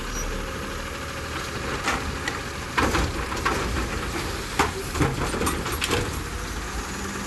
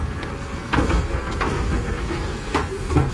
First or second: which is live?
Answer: first